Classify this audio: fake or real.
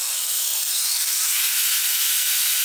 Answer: fake